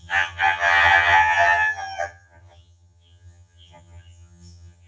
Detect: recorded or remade remade